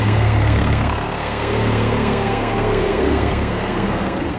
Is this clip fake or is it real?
fake